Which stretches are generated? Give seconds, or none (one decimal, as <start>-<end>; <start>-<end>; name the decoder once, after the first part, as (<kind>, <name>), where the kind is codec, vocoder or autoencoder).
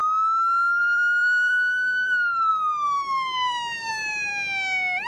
0.8-4.3 (vocoder, BigVGAN v2)